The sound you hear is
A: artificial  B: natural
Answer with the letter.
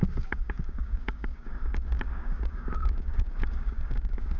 A